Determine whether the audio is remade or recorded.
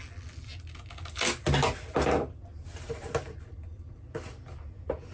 recorded